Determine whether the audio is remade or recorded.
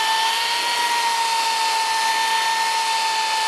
recorded